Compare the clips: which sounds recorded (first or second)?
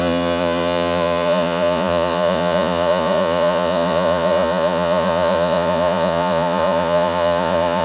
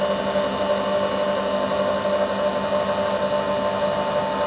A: second